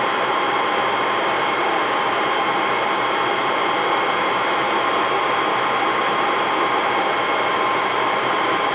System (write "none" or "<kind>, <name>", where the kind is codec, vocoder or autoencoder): vocoder, BigVGAN v2